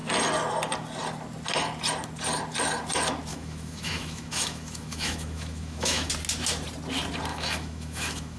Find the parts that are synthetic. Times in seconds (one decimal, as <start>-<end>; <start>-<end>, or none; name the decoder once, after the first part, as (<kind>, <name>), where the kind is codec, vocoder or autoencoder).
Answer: 3.3-6.1 (autoencoder, DAC-VAE); 7.3-8.4